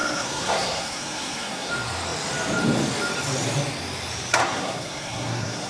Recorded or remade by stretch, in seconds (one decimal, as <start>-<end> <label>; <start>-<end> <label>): 0.0-1.7 remade; 1.7-4.3 recorded; 4.3-5.7 remade